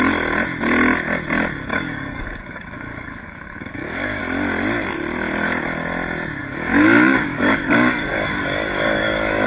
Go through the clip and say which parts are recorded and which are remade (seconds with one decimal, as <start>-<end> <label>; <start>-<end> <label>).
0.0-1.7 recorded; 1.7-4.2 remade; 4.2-6.4 recorded; 6.4-9.5 remade